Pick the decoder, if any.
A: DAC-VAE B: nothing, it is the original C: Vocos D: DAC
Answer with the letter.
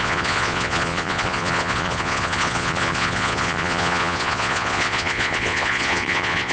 C